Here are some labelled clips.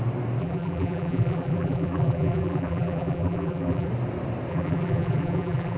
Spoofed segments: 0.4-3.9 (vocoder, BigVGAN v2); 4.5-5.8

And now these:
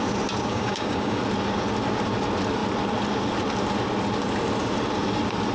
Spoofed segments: 0.5-1.2 (codec, DAC)

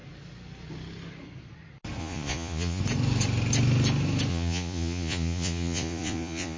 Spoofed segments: 2.0-2.8 (vocoder, Vocos); 4.3-6.6